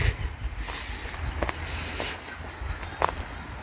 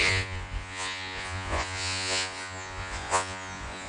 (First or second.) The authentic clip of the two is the first